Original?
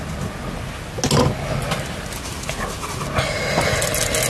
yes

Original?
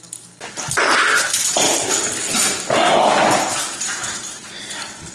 yes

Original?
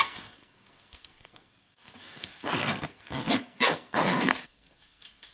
no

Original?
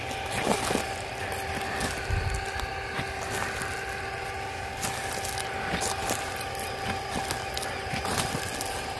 yes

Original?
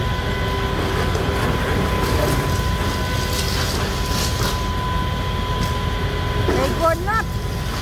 yes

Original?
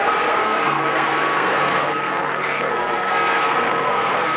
no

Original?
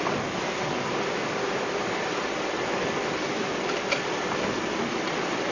yes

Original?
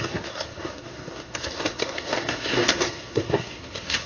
no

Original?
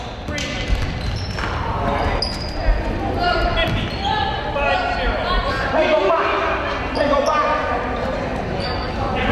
yes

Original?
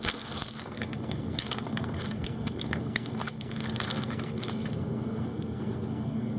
no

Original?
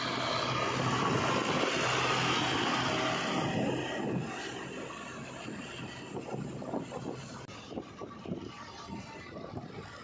yes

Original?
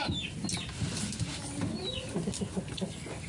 yes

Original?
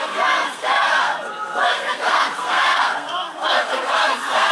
no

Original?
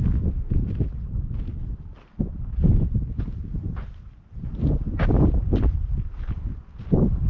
yes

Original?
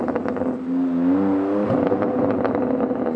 yes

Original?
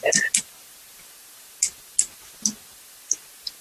yes